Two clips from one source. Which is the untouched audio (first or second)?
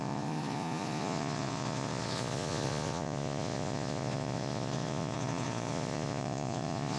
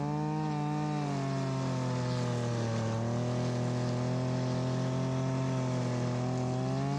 second